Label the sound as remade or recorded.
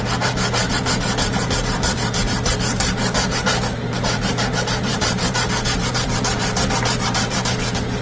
remade